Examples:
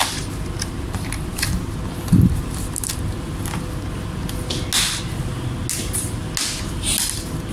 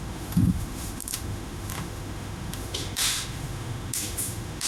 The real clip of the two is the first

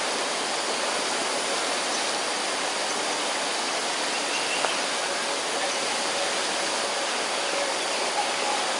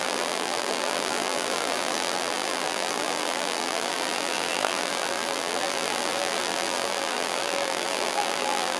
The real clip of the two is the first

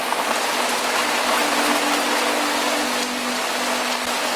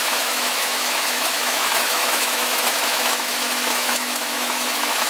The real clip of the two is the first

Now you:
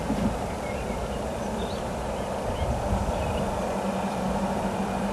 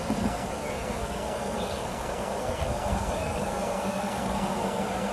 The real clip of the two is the first